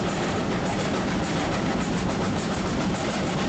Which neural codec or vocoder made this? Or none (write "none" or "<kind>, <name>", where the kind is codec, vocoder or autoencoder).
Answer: vocoder, BigVGAN v2